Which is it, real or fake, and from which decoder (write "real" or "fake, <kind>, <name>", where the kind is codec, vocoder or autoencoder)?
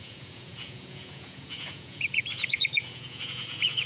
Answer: fake, vocoder, Vocos